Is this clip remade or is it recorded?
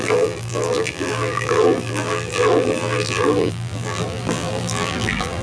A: remade